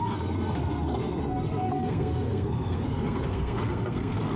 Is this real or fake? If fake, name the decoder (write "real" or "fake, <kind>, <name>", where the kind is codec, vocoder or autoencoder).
fake, codec, SNAC